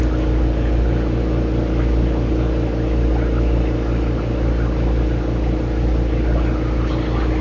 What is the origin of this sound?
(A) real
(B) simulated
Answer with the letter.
A